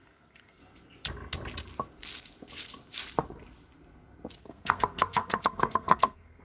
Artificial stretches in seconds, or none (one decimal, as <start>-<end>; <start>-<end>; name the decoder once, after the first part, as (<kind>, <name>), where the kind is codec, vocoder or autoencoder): 0.0-0.6 (codec, SNAC); 4.4-6.4